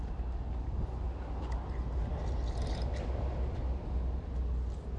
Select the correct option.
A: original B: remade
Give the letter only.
A